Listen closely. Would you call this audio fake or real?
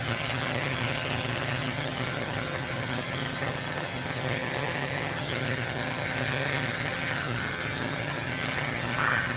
fake